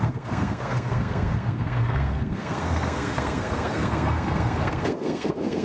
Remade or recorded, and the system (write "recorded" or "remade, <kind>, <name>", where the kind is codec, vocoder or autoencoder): remade, codec, SNAC